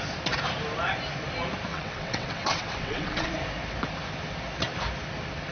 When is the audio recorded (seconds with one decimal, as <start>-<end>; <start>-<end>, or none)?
0.0-1.7; 3.3-5.5